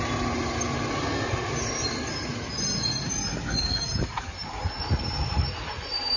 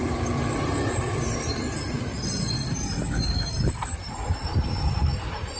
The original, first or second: first